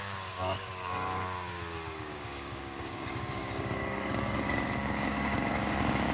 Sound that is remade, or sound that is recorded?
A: remade